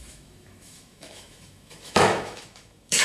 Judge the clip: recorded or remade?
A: remade